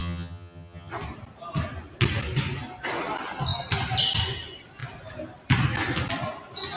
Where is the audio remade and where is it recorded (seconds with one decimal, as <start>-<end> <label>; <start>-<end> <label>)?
0.0-0.9 remade; 0.9-6.8 recorded